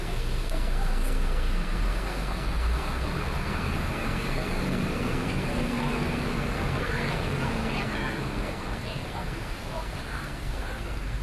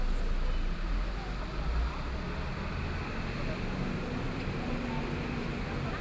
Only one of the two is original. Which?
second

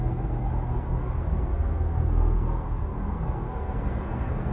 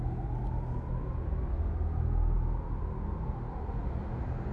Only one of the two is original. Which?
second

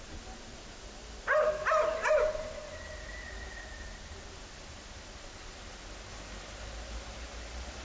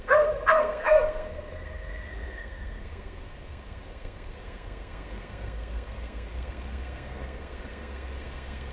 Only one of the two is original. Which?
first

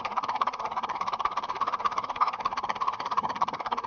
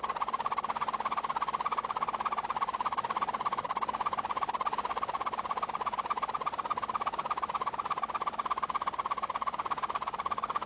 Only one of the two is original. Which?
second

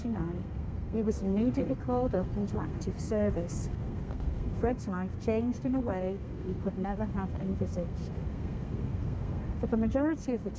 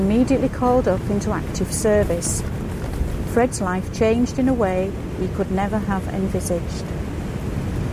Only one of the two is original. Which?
second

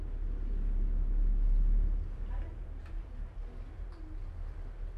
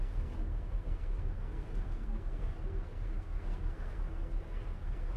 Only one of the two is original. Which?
first